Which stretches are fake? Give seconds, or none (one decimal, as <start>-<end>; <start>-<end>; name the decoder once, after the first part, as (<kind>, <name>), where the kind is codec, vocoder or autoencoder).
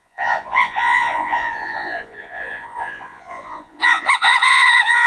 0.0-5.1 (vocoder, Vocos)